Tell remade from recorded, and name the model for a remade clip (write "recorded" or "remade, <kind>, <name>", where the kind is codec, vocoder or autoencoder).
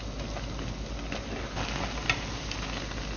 recorded